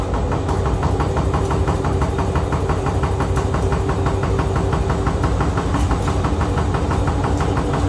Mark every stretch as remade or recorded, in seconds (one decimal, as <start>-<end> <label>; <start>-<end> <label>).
0.0-7.9 recorded